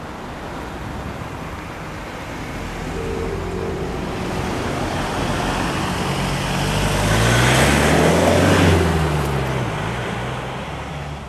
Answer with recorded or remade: recorded